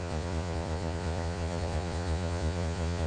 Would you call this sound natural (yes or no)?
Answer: no